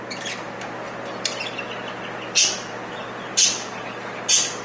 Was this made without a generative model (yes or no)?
yes